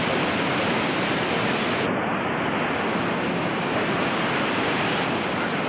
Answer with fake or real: real